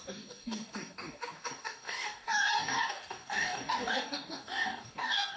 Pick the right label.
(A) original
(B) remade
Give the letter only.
B